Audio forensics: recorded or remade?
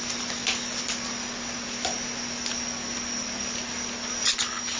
recorded